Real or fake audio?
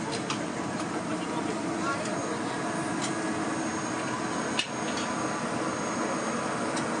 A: real